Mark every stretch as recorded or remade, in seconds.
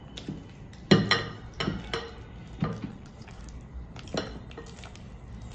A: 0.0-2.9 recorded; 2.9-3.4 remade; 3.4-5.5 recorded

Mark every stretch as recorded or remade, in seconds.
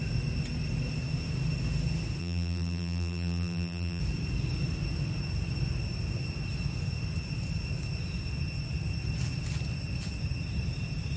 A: 0.0-2.2 recorded; 2.2-4.0 remade; 4.0-11.2 recorded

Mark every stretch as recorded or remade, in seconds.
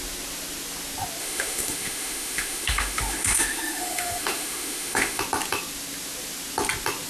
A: 0.0-1.2 recorded; 1.2-5.2 remade; 5.2-7.1 recorded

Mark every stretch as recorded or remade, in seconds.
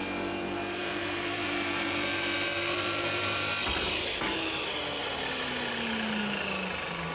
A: 0.0-0.8 recorded; 0.8-3.5 remade; 3.5-7.1 recorded